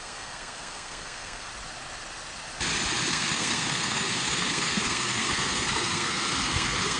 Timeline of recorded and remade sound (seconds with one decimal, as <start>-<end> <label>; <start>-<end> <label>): 0.0-1.5 remade; 1.5-3.1 recorded; 3.1-7.0 remade